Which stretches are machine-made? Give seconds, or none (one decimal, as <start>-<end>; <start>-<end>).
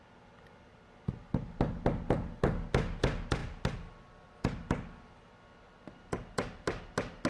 none